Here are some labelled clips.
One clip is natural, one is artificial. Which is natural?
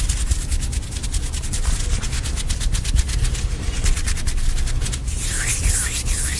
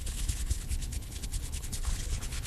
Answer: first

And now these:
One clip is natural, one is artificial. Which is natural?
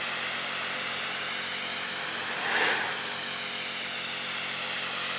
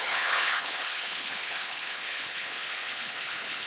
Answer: first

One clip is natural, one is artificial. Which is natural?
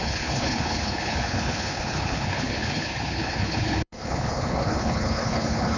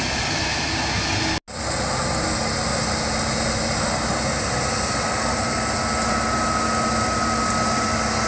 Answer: second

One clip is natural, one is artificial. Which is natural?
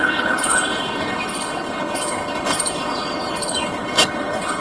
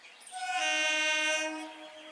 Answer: second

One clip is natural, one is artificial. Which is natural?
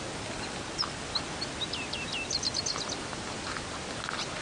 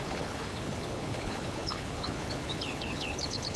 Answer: first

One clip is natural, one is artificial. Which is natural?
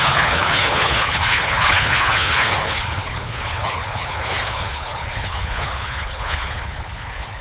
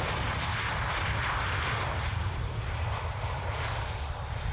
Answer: second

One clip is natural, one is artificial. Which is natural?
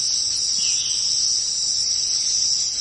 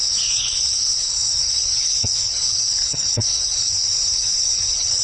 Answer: first